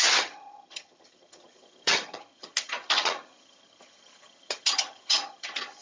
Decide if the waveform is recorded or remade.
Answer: remade